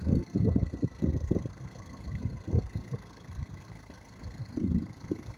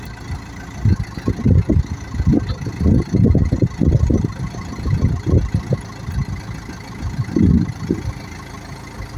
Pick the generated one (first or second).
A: first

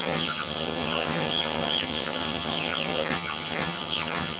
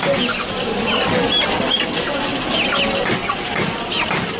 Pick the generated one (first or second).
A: first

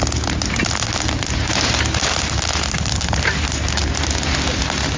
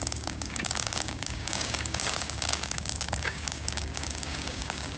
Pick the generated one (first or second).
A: second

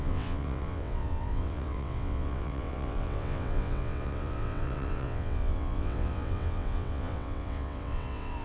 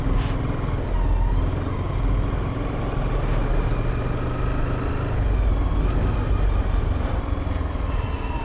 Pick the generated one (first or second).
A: first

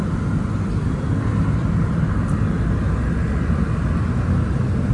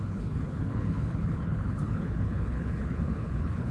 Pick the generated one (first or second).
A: second